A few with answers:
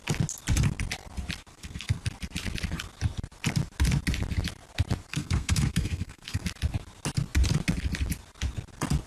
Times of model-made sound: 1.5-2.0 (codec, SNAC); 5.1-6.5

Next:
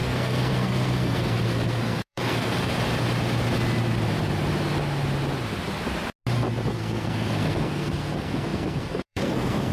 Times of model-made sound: 0.0-2.7 (codec, SNAC); 6.7-9.7

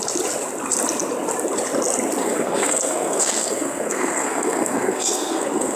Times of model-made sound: 2.2-5.8 (codec, SNAC)

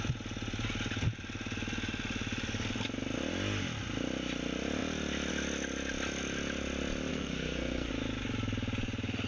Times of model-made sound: 7.1-7.9 (codec, SNAC)

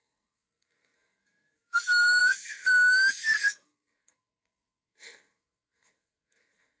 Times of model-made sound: 0.0-6.8 (codec, SNAC)